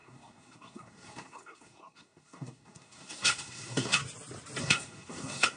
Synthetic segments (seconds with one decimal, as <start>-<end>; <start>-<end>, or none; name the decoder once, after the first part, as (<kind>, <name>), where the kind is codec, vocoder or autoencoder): 0.0-4.0 (codec, SNAC); 4.6-5.6